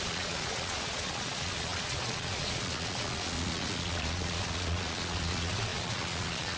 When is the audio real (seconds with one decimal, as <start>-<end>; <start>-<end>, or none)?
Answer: none